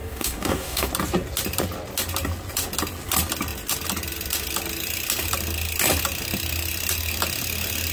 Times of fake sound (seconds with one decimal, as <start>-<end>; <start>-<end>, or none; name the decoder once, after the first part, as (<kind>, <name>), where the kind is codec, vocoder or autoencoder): 0.0-0.9 (codec, DAC)